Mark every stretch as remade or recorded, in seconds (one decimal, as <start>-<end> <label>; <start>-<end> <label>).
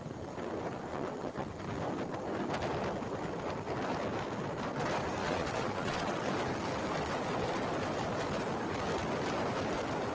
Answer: 0.0-0.9 recorded; 0.9-1.5 remade; 1.5-5.2 recorded; 5.2-6.3 remade; 6.3-10.1 recorded